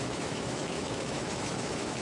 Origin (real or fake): fake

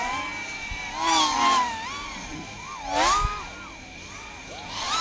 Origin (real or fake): real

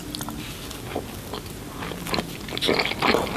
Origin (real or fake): real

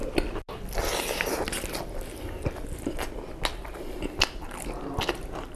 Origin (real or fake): real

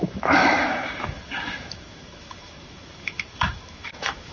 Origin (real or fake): fake